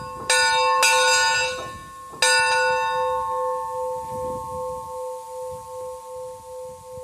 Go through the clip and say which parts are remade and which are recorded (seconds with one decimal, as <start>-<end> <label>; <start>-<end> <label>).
0.0-7.0 recorded